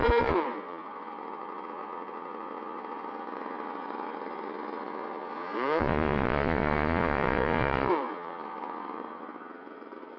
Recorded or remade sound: remade